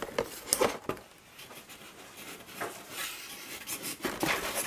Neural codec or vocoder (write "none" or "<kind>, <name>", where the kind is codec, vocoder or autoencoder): none